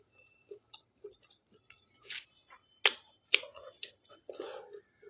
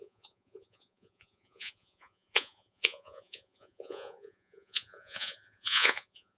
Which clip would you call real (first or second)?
first